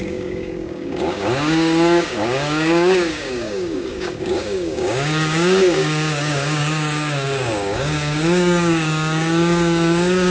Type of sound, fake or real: fake